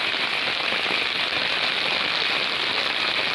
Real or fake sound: real